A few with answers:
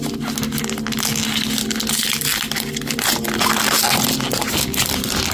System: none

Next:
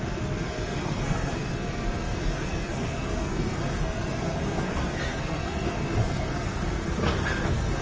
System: codec, SNAC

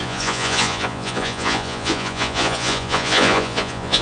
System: vocoder, Vocos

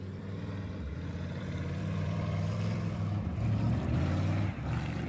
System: vocoder, BigVGAN v2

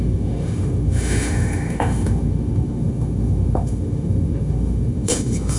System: autoencoder, DAC-VAE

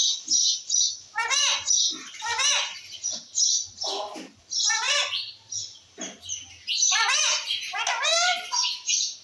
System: none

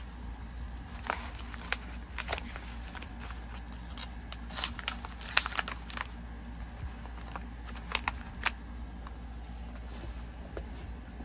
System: none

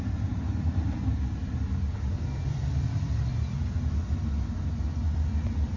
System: none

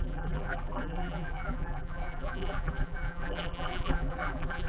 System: vocoder, BigVGAN v2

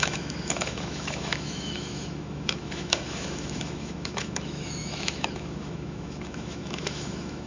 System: autoencoder, DAC-VAE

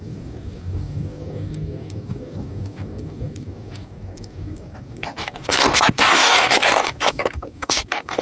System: codec, DAC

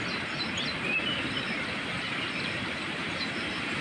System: vocoder, BigVGAN v2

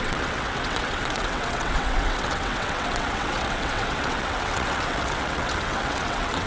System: vocoder, WaveNeXt